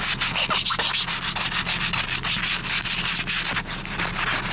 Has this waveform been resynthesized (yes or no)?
no